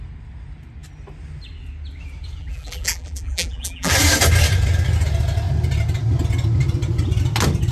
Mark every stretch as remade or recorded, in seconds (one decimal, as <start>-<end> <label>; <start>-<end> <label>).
0.0-2.4 recorded; 2.4-3.9 remade; 3.9-7.7 recorded